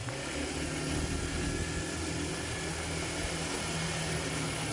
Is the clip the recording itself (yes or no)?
yes